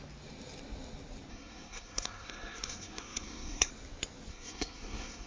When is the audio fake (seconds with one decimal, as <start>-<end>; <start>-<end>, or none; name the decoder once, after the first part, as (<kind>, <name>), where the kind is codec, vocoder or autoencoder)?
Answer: 1.3-3.7 (codec, SNAC); 4.3-5.3